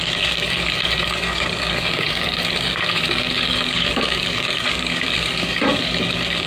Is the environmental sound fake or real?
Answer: fake